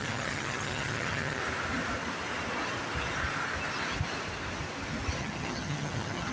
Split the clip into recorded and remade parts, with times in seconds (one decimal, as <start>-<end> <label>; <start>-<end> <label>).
0.0-1.4 remade; 1.4-5.2 recorded; 5.2-6.3 remade